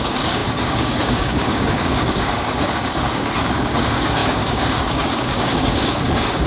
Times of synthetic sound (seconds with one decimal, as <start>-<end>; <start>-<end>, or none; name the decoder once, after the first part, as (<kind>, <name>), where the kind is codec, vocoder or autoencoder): 0.0-6.5 (codec, DAC)